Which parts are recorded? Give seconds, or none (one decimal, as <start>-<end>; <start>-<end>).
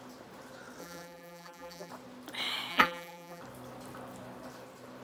0.0-0.8; 1.9-2.7; 3.4-5.0